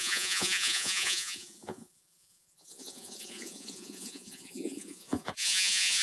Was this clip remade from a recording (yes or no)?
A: yes